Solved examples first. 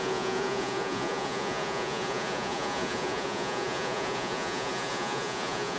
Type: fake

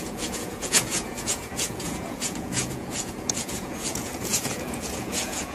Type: fake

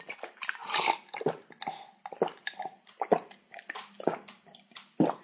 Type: real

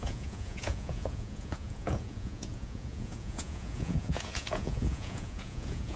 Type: fake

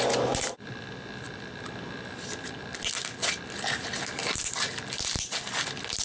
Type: real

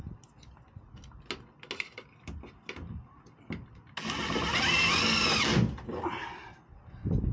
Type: real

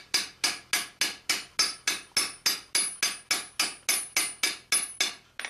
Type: real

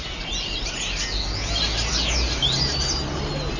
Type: real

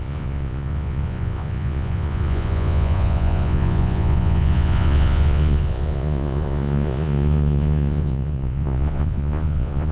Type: fake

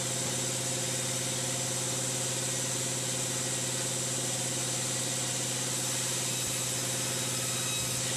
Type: real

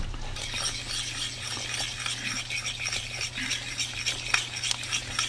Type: real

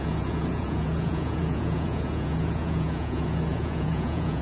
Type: fake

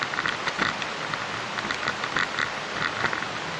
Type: real